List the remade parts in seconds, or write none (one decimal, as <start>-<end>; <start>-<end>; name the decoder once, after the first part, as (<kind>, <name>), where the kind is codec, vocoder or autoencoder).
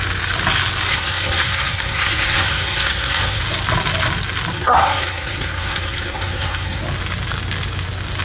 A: 0.9-3.4 (codec, SNAC); 4.5-6.8